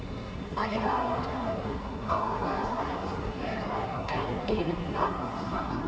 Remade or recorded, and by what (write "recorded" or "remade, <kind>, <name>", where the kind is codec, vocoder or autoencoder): remade, codec, SNAC